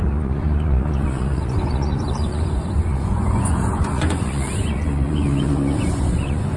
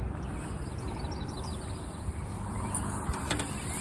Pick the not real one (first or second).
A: first